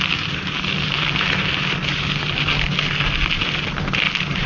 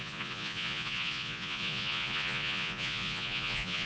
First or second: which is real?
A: first